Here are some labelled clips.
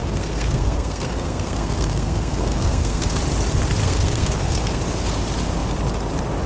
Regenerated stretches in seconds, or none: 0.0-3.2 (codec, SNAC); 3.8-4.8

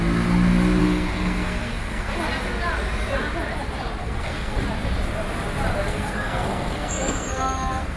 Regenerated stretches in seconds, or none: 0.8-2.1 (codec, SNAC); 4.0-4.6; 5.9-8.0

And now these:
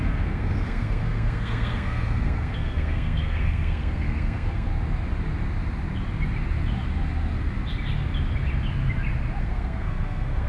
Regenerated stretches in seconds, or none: 0.0-4.7 (codec, SNAC); 9.4-10.5